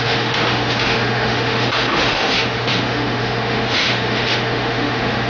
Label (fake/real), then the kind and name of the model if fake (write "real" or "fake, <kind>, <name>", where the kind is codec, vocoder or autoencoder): fake, autoencoder, DAC-VAE